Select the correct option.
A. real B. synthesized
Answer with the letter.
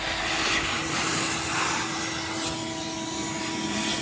A